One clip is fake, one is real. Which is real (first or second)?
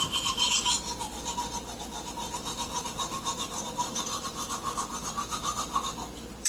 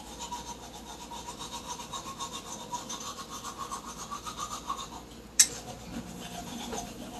second